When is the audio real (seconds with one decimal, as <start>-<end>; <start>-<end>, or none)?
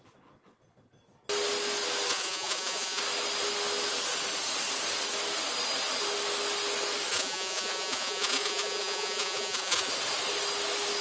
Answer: 0.0-2.1; 3.0-7.1; 9.9-11.0